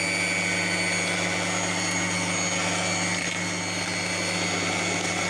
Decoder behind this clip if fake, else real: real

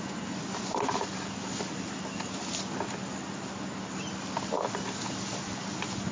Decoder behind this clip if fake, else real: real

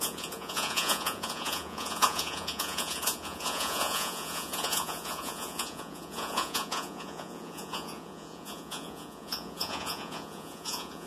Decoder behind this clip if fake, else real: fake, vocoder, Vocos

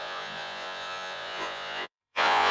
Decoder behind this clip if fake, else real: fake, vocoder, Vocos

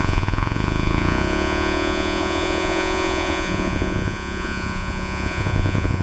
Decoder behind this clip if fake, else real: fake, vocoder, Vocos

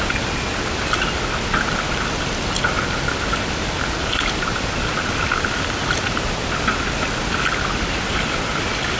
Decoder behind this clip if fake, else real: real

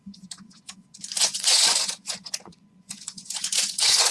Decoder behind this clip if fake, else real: fake, vocoder, Vocos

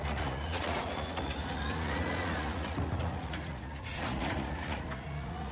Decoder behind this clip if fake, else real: fake, vocoder, Vocos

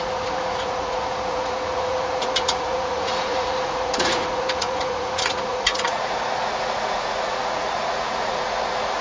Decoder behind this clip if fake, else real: fake, vocoder, Vocos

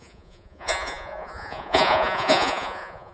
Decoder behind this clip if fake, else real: fake, vocoder, Vocos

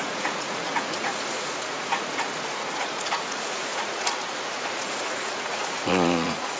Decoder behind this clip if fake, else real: fake, vocoder, Vocos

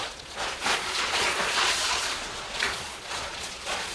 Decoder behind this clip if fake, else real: fake, vocoder, Vocos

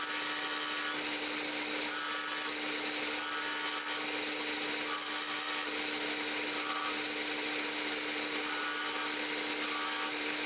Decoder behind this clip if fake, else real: real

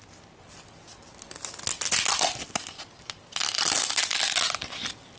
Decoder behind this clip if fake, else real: real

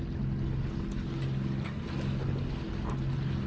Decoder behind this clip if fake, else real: real